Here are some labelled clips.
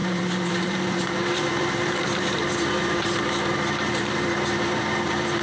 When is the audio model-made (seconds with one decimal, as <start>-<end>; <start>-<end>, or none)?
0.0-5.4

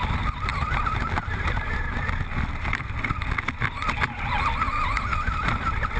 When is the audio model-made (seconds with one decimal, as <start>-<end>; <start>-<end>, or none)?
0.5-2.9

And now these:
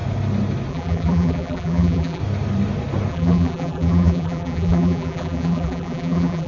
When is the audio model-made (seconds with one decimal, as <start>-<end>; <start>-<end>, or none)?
0.7-2.2; 3.1-6.5

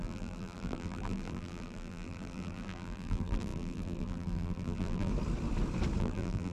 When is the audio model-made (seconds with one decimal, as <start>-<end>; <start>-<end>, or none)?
0.0-5.1; 6.0-6.5

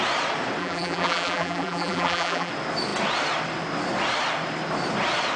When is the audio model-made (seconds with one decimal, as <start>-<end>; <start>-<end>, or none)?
0.6-2.5

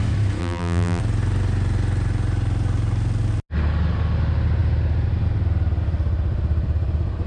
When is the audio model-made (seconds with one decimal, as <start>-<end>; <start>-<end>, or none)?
0.4-1.0

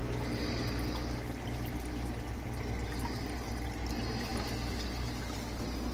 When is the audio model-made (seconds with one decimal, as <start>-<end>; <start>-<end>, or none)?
none